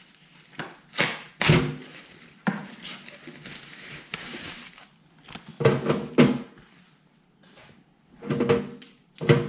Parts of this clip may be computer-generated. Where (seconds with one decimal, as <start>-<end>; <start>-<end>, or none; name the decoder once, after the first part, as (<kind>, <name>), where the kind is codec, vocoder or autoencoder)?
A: 5.5-6.1 (autoencoder, DAC-VAE)